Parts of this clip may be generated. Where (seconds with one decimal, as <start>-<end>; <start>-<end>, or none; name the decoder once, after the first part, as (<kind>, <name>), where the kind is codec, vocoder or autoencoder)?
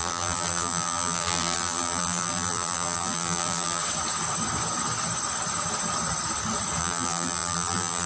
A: 0.0-3.8 (vocoder, BigVGAN v2); 6.8-8.1